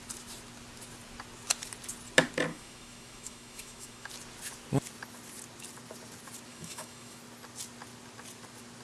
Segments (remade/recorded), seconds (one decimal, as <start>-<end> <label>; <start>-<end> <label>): 0.0-2.5 recorded; 2.5-4.1 remade; 4.1-6.5 recorded; 6.5-7.2 remade; 7.2-8.8 recorded